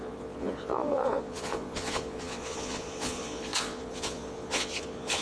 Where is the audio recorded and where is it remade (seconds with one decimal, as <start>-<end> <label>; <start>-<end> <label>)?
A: 0.0-5.2 remade